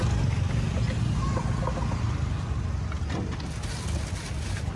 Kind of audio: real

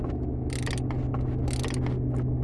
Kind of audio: real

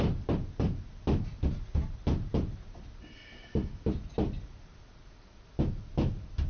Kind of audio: real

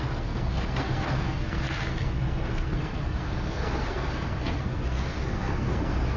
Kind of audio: fake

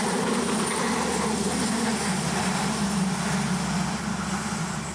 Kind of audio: real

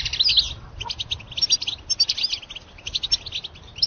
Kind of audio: real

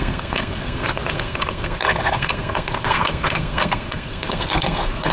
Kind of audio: fake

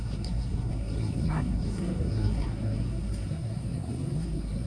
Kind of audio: fake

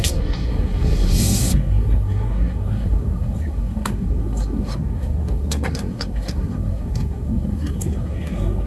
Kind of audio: fake